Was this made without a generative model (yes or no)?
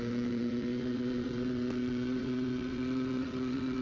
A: no